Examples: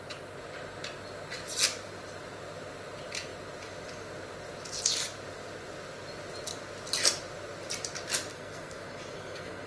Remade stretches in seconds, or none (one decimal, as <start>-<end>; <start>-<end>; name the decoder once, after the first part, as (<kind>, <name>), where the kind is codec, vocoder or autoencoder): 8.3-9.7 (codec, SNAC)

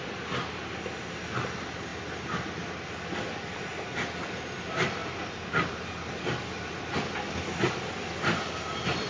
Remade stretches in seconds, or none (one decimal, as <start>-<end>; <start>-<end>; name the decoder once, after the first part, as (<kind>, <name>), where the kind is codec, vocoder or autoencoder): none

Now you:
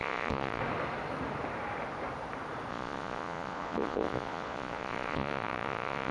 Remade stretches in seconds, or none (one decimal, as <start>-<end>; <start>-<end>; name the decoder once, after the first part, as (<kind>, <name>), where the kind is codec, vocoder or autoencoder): 0.0-0.6 (vocoder, Vocos); 2.7-6.1